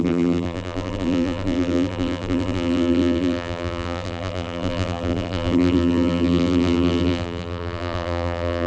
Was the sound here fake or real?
fake